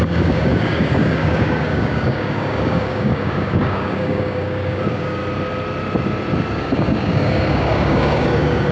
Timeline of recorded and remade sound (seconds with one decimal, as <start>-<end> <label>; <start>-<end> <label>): 0.0-5.2 remade; 5.2-6.5 recorded; 6.5-8.7 remade